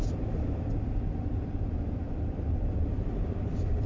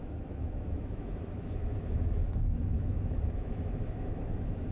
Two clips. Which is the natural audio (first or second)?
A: first